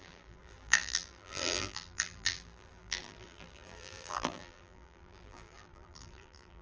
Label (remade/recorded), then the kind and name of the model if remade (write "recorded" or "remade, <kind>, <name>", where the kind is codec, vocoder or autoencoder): remade, vocoder, BigVGAN v2